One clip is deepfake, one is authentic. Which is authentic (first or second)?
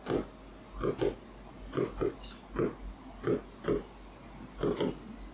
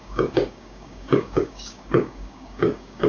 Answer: first